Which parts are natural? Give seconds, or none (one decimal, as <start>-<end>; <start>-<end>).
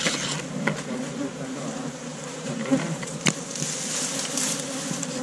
0.0-2.1; 3.2-5.2